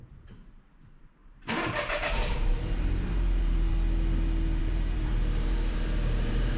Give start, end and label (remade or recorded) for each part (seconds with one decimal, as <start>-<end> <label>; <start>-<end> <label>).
0.0-1.2 recorded; 1.2-3.7 remade; 3.7-4.6 recorded; 4.6-6.6 remade